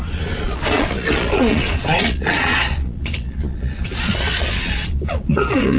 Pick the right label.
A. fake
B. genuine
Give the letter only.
A